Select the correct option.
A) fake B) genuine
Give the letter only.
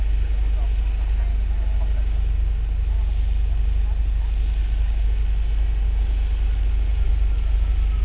B